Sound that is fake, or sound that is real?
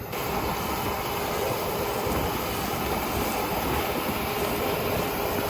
real